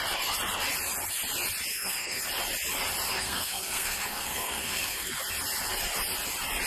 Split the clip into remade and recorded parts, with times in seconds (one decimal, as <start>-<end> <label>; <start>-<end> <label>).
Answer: 0.0-1.7 recorded; 1.7-2.2 remade; 2.2-3.1 recorded; 3.1-5.2 remade; 5.2-6.7 recorded